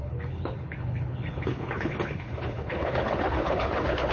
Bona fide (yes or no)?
no